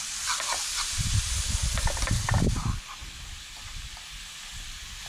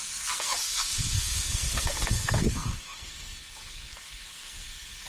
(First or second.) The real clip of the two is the first